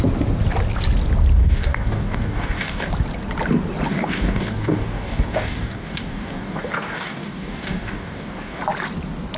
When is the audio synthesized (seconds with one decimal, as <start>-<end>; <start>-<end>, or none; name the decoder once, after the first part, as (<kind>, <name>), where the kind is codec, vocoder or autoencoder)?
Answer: 1.4-2.9 (codec, DAC); 3.9-8.6